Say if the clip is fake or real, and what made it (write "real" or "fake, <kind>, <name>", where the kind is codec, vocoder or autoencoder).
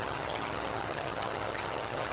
fake, vocoder, HiFi-GAN